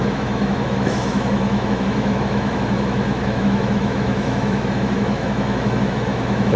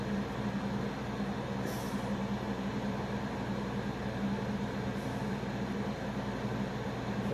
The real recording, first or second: second